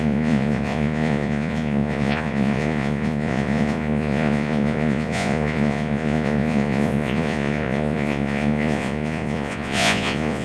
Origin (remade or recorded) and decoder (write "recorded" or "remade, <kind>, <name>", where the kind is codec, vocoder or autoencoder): remade, vocoder, Vocos